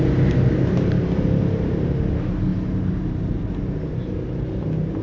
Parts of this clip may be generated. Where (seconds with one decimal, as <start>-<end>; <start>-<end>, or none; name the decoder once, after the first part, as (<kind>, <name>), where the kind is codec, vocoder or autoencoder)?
none